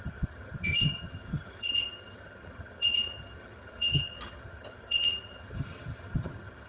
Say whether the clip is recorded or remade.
remade